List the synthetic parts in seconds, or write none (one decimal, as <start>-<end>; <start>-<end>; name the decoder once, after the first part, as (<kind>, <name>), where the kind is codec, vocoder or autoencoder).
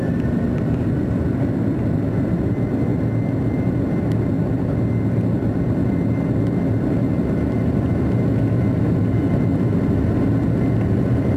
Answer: none